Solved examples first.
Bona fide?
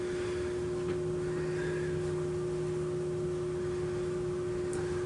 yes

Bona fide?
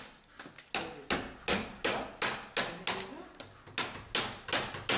yes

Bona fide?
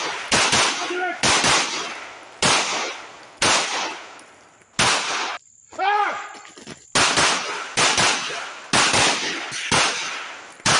yes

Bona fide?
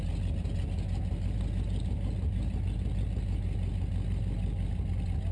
yes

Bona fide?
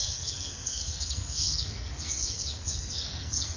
no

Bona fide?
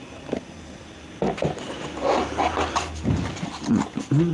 yes